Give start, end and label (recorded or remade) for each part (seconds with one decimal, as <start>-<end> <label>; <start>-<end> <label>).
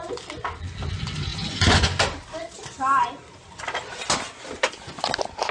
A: 0.0-1.3 recorded; 1.3-2.0 remade; 2.0-5.5 recorded